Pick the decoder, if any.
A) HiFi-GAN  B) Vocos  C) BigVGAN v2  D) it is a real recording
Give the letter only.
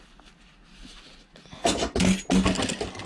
D